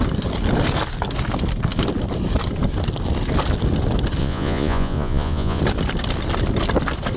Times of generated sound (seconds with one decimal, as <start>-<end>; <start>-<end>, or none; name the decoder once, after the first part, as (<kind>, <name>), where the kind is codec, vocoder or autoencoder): 4.2-5.6 (vocoder, Vocos)